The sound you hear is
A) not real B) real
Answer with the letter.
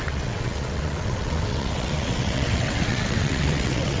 A